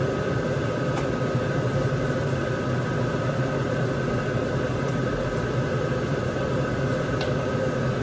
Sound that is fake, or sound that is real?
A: real